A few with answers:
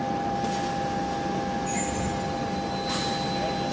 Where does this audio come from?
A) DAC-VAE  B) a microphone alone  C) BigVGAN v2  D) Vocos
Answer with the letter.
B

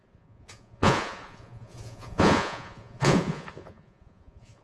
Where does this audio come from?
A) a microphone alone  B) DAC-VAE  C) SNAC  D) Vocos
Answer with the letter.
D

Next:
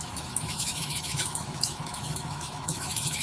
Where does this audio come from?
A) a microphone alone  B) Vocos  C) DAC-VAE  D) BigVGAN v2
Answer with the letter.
C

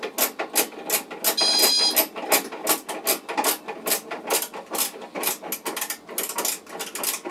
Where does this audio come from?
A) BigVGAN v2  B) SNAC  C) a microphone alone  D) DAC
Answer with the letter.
C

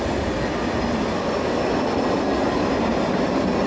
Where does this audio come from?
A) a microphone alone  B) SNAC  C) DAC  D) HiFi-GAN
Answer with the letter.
A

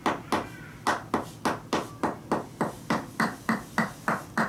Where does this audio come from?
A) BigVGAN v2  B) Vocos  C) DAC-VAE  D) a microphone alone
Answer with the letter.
D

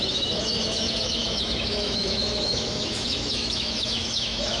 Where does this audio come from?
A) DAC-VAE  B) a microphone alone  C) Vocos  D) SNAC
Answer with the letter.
A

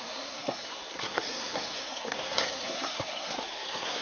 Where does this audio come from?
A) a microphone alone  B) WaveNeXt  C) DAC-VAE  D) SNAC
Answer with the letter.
D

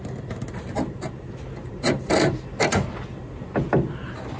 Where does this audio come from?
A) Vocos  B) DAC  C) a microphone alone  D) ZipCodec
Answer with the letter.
C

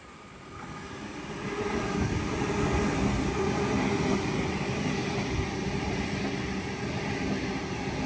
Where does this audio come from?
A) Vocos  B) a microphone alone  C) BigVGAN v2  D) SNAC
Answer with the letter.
B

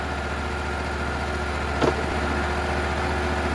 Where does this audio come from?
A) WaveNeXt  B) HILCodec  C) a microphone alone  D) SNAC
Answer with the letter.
C